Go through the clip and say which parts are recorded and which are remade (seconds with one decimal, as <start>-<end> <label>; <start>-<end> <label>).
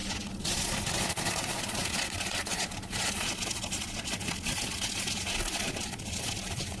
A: 0.0-6.8 remade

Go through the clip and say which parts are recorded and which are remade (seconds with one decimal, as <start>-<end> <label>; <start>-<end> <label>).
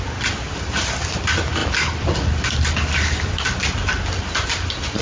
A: 0.0-5.0 recorded